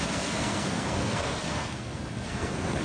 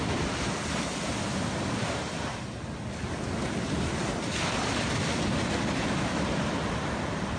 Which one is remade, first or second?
first